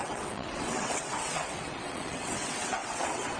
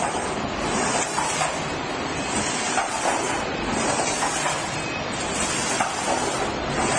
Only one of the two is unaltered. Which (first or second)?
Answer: second